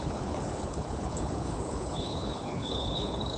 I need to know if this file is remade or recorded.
remade